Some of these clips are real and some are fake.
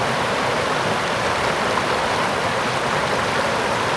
real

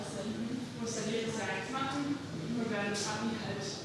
real